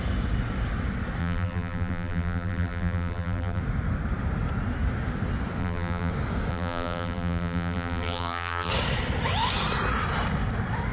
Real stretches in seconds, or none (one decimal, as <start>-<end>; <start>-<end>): 0.0-1.2; 3.6-5.6; 6.1-6.5; 8.7-10.9